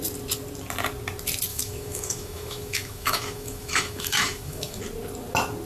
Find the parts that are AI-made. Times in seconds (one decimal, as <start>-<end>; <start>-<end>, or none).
1.5-4.8